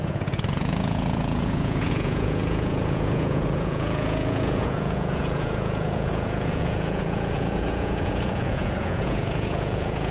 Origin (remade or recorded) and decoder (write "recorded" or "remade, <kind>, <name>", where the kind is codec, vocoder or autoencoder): remade, vocoder, Vocos